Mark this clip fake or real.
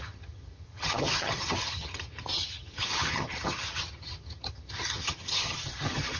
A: fake